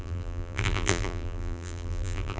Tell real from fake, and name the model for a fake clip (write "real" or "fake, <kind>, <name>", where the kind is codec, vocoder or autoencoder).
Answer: fake, vocoder, BigVGAN v2